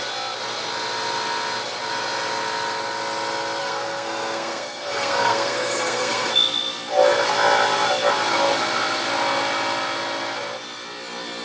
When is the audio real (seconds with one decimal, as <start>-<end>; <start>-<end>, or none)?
0.0-3.6; 6.3-11.4